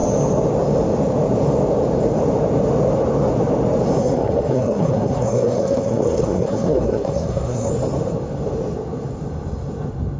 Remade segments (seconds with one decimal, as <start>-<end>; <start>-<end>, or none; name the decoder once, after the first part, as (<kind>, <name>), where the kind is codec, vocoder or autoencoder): 4.0-7.7 (codec, SNAC)